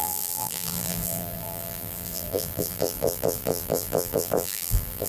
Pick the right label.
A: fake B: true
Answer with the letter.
A